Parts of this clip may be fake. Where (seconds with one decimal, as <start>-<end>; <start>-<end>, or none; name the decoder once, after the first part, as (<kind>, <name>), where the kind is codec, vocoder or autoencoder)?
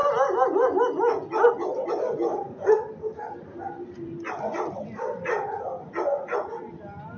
none